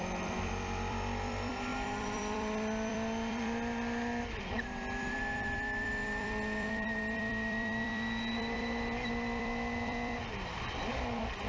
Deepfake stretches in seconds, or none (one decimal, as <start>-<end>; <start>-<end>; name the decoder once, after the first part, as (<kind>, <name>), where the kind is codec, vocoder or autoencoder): 0.0-11.5 (vocoder, BigVGAN v2)